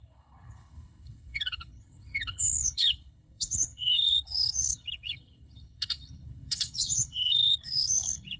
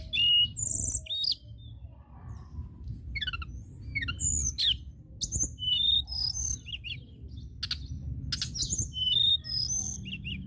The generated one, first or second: first